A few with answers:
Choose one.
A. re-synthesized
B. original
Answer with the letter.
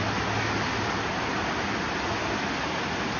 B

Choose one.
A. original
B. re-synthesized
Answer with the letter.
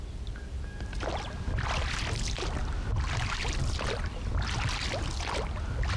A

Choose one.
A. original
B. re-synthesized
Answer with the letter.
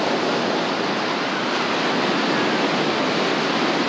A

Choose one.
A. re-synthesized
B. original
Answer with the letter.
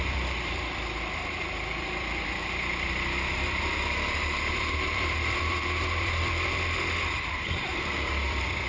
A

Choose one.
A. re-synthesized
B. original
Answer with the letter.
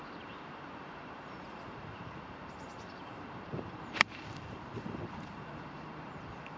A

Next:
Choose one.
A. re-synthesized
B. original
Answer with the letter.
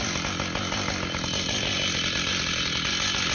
A